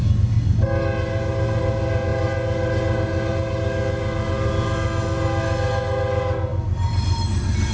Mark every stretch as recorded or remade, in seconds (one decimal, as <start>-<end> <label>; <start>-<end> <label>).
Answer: 0.0-7.7 recorded